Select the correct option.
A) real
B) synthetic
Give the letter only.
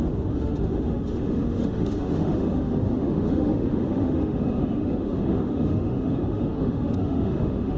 B